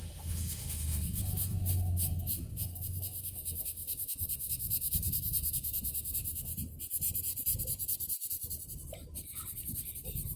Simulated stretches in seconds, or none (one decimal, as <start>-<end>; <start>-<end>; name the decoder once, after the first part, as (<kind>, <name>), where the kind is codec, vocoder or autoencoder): 0.0-6.5 (autoencoder, DAC-VAE)